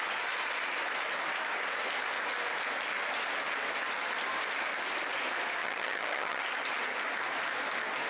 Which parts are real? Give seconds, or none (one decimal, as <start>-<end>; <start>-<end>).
0.0-5.6; 6.4-8.1